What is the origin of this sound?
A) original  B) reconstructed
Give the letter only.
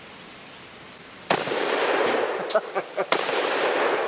B